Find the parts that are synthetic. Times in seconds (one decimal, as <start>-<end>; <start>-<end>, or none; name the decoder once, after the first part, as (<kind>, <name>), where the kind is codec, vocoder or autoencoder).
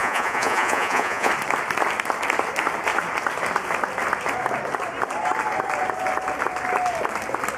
0.0-1.3 (vocoder, Vocos)